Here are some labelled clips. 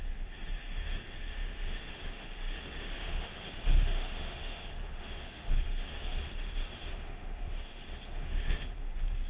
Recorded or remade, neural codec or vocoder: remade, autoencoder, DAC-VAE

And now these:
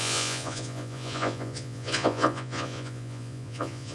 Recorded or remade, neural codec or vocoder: remade, vocoder, Vocos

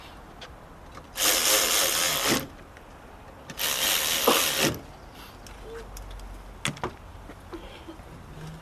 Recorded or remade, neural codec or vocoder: recorded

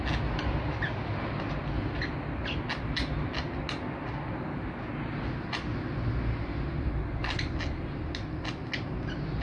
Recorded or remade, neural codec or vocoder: recorded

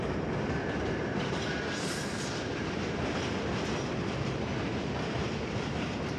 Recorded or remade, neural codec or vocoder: remade, vocoder, BigVGAN v2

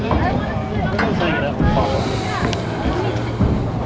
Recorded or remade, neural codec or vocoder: recorded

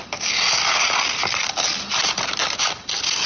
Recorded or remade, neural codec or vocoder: recorded